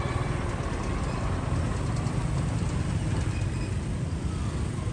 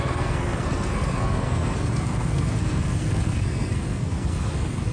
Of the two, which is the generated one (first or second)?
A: second